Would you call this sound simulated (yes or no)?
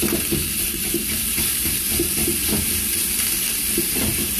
no